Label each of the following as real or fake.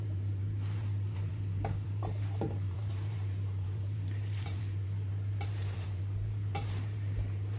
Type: fake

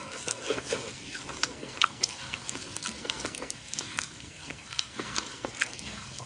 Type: fake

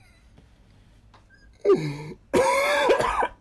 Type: real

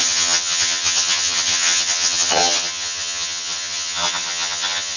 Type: fake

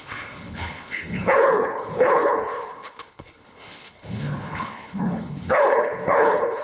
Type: fake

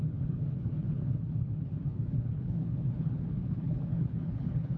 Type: fake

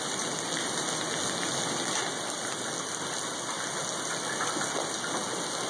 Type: real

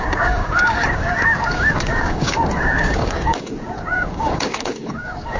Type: fake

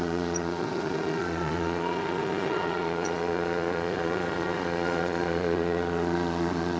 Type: fake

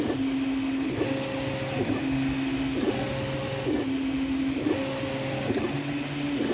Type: real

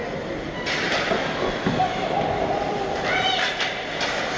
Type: real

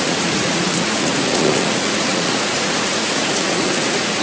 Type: fake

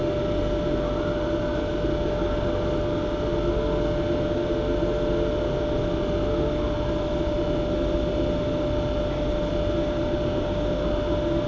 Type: real